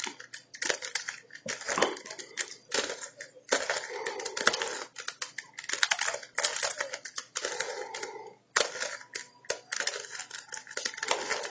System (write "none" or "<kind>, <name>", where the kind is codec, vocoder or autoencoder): none